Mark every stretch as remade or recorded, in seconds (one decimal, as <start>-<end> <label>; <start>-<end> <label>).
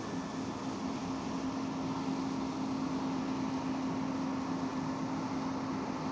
0.0-6.1 recorded